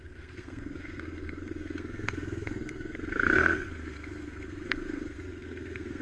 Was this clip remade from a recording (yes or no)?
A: yes